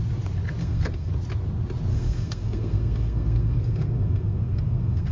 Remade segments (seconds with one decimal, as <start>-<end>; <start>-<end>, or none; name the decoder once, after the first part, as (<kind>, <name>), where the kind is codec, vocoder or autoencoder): 0.6-1.1 (codec, SNAC); 1.9-5.1